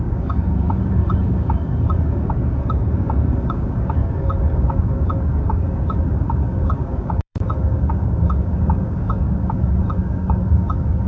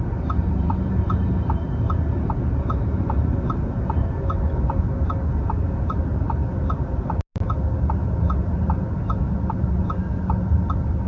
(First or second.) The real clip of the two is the second